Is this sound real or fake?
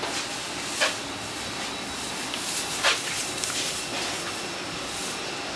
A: real